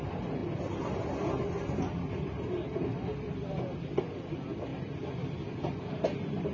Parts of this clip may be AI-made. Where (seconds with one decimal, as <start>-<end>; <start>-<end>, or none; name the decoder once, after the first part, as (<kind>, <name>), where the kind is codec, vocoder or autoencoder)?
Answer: none

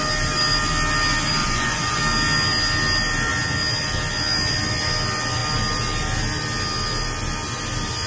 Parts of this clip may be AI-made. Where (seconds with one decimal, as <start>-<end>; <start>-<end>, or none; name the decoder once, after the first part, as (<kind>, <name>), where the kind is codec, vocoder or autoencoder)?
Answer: 1.4-2.0 (vocoder, Vocos)

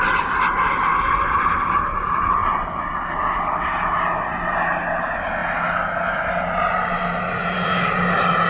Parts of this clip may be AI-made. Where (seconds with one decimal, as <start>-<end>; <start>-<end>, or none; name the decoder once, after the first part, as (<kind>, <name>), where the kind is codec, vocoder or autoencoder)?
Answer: none

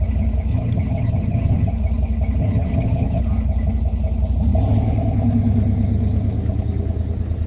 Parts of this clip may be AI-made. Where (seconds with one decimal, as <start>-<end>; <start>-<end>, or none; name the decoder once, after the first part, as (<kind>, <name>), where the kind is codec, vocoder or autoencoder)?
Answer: 0.5-1.7 (vocoder, HiFi-GAN); 2.4-3.2

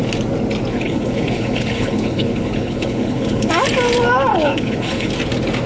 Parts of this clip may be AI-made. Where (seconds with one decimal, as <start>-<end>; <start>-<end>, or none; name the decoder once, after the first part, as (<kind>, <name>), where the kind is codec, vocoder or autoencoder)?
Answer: 0.7-3.5 (codec, HILCodec); 4.3-5.1

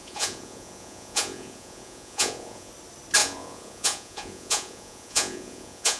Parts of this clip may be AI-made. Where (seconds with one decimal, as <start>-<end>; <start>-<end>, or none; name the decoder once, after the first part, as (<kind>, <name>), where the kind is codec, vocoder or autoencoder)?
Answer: 0.0-2.7 (vocoder, Vocos); 3.2-6.0

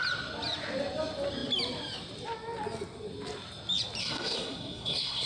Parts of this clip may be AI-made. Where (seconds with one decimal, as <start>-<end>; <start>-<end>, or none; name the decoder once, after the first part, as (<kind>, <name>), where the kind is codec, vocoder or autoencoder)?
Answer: 4.0-5.3 (codec, SNAC)